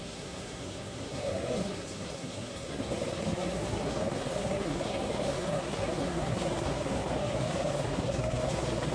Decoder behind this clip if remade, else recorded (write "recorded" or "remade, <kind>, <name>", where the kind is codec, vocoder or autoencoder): remade, codec, SNAC